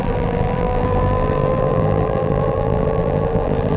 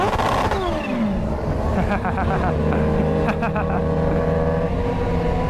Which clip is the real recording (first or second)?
second